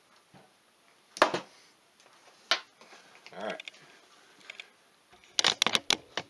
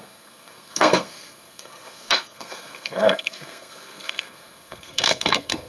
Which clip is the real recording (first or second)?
first